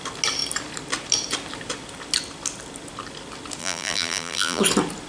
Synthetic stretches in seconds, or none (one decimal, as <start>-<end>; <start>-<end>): 3.6-4.6